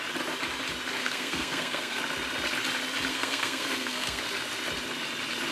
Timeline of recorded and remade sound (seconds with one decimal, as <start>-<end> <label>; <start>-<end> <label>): 0.0-1.0 recorded; 1.0-2.0 remade; 2.0-3.1 recorded; 3.1-4.2 remade; 4.2-5.5 recorded